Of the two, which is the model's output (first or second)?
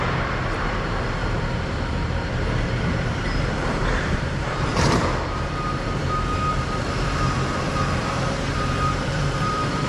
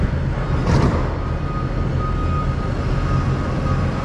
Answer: first